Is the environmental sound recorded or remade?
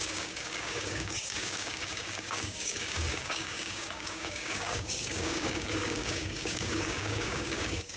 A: remade